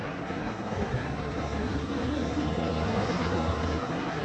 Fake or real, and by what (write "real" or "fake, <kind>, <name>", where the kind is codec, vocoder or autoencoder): fake, codec, SNAC